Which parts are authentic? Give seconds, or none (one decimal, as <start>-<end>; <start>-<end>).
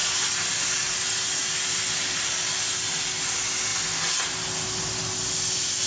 0.0-5.9